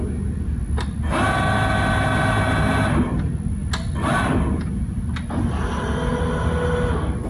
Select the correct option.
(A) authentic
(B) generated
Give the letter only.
A